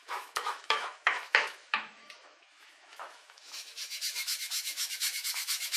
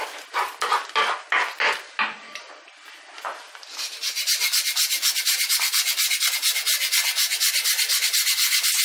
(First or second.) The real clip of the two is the second